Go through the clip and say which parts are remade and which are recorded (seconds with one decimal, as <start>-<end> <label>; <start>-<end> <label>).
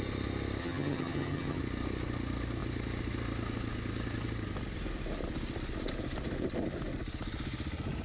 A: 0.0-0.6 recorded; 0.6-1.6 remade; 1.6-8.0 recorded